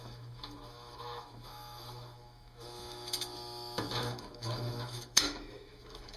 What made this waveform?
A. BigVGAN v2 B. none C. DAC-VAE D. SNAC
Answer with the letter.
C